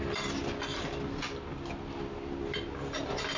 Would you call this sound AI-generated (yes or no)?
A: no